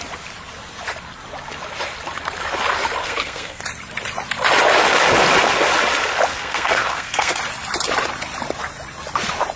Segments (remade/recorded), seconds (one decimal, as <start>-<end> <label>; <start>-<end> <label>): 0.0-3.0 recorded; 3.0-3.6 remade; 3.6-6.3 recorded; 6.3-7.4 remade; 7.4-9.6 recorded